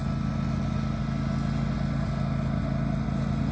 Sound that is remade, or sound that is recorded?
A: recorded